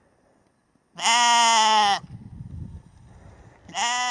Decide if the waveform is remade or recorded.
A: recorded